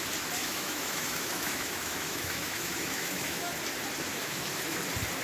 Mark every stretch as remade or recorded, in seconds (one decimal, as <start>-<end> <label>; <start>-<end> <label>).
0.0-0.4 recorded; 0.4-3.5 remade; 3.5-4.1 recorded; 4.1-4.8 remade; 4.8-5.2 recorded

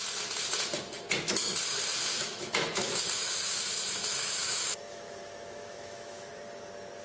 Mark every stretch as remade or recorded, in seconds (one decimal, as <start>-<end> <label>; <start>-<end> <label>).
0.0-2.1 recorded; 2.1-6.3 remade; 6.3-7.0 recorded

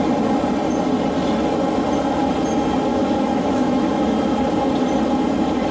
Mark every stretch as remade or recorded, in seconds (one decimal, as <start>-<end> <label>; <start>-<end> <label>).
0.0-2.9 recorded; 2.9-3.9 remade; 3.9-5.7 recorded

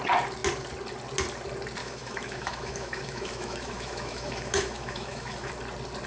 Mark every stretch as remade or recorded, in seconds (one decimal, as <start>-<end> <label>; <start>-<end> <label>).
0.0-1.8 recorded; 1.8-5.5 remade; 5.5-6.1 recorded

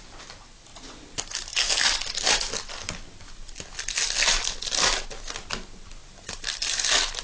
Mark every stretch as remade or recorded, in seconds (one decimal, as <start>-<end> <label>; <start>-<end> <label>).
0.0-7.2 recorded